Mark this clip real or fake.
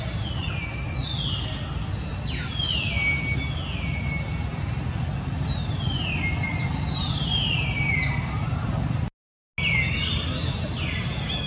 real